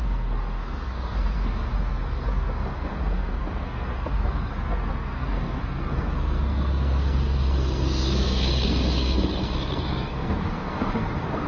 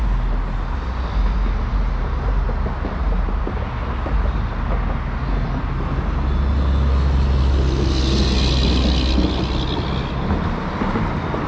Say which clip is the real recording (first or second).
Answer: second